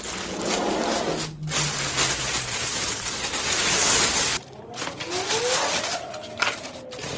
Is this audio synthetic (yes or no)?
no